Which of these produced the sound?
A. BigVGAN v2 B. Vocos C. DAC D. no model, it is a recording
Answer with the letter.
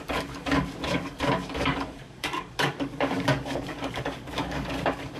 C